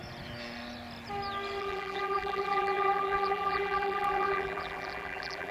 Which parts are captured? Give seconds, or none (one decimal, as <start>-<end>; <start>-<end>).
0.0-1.6